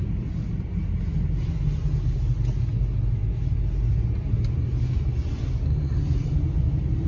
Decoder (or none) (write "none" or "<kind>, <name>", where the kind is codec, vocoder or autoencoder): none